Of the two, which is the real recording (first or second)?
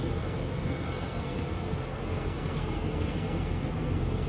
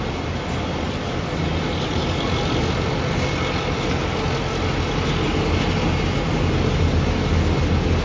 second